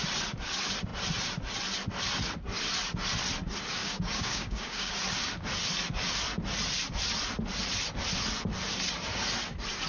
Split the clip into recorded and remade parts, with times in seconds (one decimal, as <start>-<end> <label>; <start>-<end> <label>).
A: 0.0-3.8 recorded; 3.8-4.9 remade; 4.9-9.9 recorded